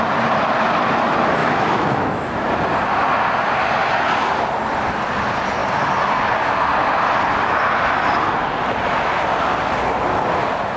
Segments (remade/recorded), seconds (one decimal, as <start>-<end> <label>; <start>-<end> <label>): 0.0-1.4 recorded; 1.4-2.5 remade; 2.5-10.8 recorded